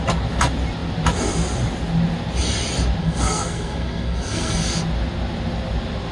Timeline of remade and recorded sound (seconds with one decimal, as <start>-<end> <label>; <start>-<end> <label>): 0.0-3.0 recorded; 3.0-4.8 remade; 4.8-6.1 recorded